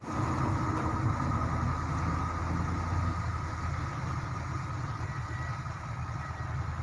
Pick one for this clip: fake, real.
real